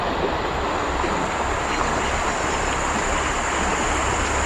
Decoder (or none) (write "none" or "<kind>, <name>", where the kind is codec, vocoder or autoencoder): none